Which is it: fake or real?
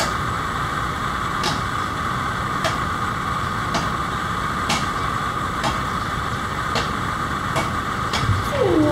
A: fake